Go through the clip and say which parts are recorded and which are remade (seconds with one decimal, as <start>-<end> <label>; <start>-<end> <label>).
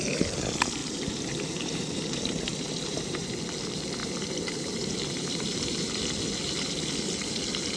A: 0.0-0.8 recorded; 0.8-3.3 remade; 3.3-4.0 recorded; 4.0-6.1 remade; 6.1-7.8 recorded